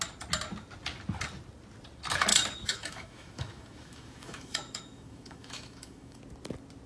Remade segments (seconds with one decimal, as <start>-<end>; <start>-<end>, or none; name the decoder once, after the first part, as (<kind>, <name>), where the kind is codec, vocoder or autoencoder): 2.3-6.2 (autoencoder, DAC-VAE)